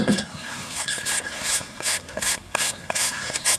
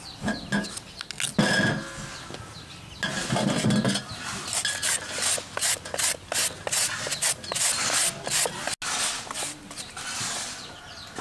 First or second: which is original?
second